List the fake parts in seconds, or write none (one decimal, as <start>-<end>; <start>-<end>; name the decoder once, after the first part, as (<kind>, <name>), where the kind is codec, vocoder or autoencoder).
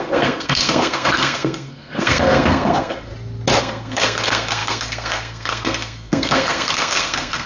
0.0-3.1 (codec, SNAC); 3.6-7.5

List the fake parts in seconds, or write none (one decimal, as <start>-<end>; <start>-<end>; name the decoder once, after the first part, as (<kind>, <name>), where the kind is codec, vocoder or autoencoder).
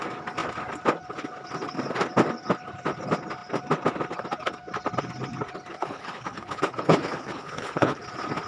5.7-8.0 (codec, HILCodec)